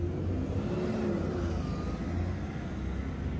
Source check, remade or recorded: recorded